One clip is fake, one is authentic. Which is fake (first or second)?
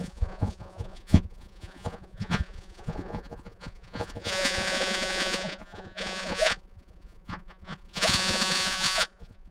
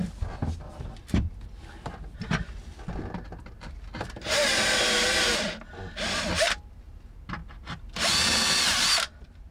first